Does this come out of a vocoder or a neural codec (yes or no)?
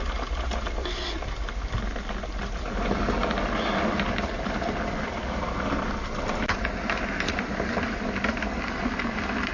no